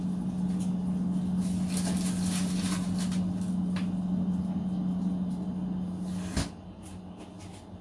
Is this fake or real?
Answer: real